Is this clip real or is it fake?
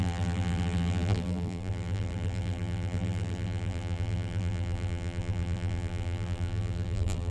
fake